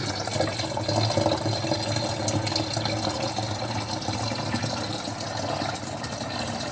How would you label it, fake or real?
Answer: real